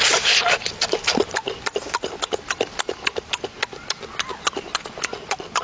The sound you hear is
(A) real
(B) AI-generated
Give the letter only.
A